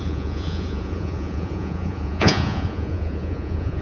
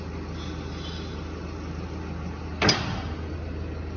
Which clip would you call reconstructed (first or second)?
first